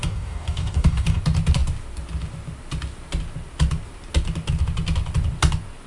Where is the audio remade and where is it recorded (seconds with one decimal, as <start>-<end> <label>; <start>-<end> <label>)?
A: 0.0-1.2 remade; 1.2-5.9 recorded